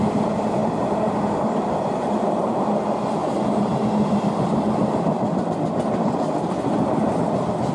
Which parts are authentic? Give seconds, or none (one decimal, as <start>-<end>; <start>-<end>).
0.6-1.1